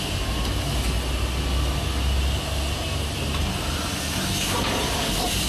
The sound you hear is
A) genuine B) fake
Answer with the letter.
A